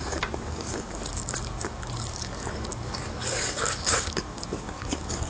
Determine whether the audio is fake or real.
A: fake